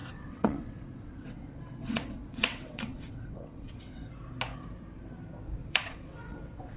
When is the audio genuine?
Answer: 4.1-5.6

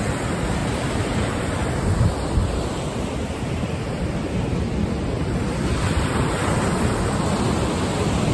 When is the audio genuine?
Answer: 0.0-0.6; 1.4-6.7; 7.2-8.3

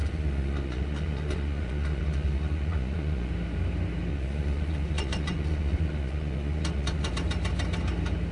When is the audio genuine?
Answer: 3.3-4.1; 7.1-8.3

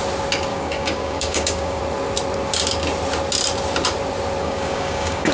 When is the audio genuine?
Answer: 0.0-0.5; 1.8-4.4

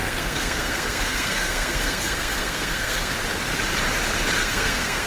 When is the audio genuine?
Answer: 3.1-4.4

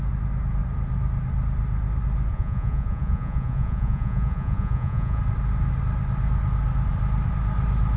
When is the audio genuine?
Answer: 0.0-2.3; 5.2-8.0

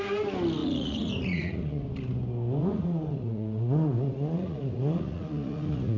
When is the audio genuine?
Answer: 0.0-0.6; 1.8-2.6